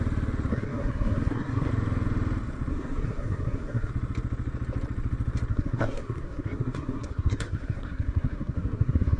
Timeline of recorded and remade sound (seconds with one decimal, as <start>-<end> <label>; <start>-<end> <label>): 0.0-0.5 recorded; 0.5-1.7 remade; 1.7-2.7 recorded; 2.7-3.9 remade; 3.9-5.5 recorded; 5.5-9.2 remade